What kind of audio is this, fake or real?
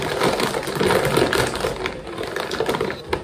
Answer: real